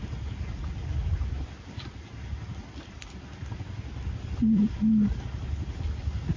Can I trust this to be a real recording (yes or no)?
yes